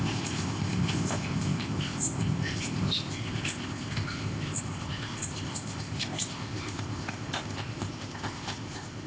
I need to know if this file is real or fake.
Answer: fake